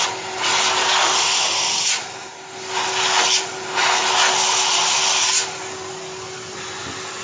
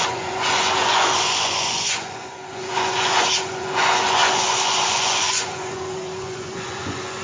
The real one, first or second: first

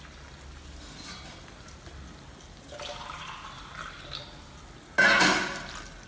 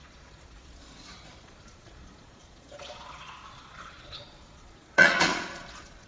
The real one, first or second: first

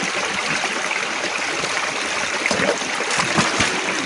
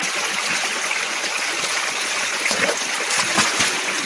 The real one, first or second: first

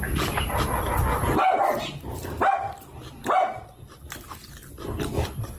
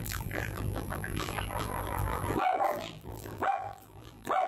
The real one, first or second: first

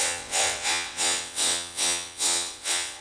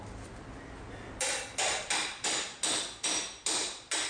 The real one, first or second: second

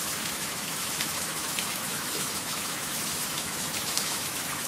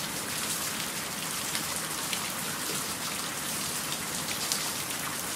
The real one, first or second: second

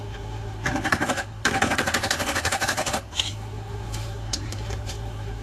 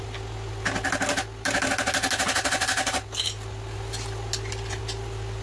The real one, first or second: second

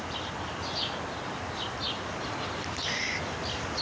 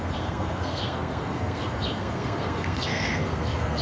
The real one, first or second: first